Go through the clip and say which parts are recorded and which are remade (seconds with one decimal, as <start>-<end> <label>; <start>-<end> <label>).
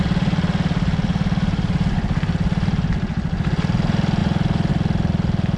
0.0-5.6 recorded